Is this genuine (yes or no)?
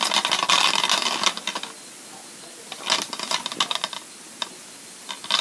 yes